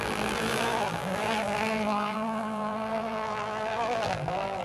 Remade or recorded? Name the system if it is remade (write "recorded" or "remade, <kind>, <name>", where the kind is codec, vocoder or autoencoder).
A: remade, vocoder, BigVGAN v2